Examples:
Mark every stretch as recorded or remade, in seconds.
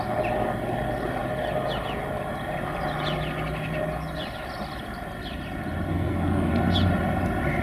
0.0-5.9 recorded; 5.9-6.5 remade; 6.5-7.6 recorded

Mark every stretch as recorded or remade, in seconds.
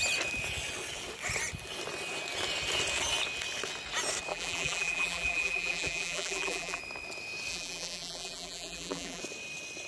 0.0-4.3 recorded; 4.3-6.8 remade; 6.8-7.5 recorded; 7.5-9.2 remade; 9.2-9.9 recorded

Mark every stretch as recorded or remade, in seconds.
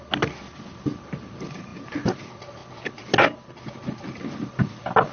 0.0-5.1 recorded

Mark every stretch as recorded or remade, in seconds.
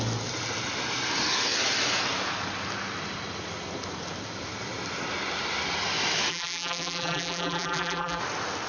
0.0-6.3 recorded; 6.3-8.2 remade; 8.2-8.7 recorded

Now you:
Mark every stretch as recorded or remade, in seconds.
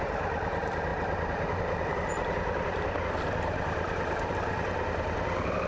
0.0-5.7 recorded